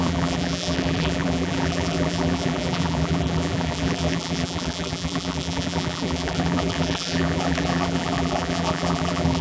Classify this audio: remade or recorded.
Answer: remade